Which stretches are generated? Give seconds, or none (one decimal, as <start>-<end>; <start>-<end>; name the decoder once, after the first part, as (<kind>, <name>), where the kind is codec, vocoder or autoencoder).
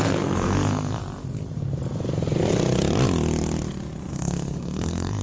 0.0-1.0 (codec, SNAC); 4.1-5.2